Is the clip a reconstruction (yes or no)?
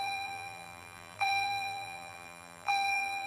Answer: yes